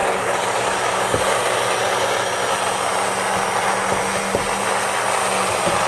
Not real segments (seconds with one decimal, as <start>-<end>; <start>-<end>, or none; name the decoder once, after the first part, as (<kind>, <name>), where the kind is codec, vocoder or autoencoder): 0.0-1.2 (codec, DAC)